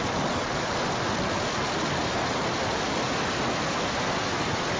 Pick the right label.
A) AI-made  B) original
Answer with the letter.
B